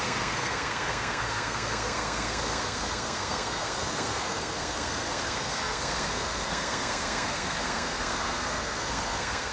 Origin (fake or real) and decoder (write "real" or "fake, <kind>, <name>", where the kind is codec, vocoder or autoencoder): fake, codec, SNAC